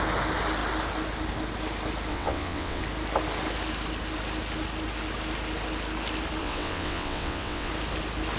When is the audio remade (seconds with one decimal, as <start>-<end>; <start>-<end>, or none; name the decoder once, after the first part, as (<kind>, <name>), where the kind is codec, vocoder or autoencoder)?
2.1-2.8 (vocoder, WaveNeXt); 6.4-7.7